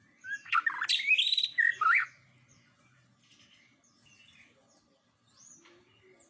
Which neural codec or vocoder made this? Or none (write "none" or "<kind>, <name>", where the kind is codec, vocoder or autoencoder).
none